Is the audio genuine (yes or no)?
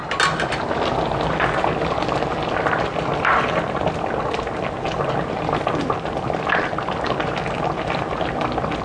yes